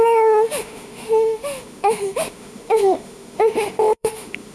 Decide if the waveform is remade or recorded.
remade